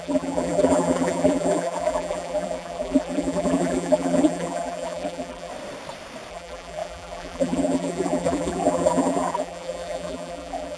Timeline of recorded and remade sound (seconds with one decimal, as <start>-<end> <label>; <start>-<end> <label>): 0.0-5.5 remade; 5.5-6.3 recorded; 6.3-10.8 remade